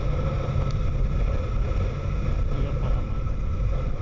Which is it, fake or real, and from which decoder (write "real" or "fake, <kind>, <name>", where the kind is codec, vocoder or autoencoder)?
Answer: real